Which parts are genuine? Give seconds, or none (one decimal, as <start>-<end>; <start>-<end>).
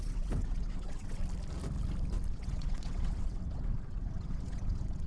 1.2-2.3